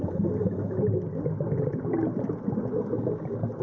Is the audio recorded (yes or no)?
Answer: yes